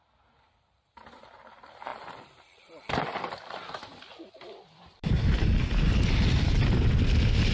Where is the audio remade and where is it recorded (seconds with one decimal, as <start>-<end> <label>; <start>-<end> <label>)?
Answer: 0.0-7.5 recorded